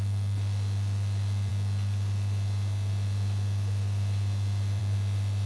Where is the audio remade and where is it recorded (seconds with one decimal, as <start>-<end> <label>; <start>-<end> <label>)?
0.0-5.5 recorded